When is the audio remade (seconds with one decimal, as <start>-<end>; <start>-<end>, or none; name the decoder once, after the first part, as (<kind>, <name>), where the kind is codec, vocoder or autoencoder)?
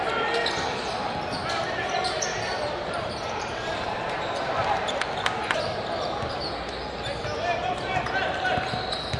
2.3-5.0 (vocoder, BigVGAN v2)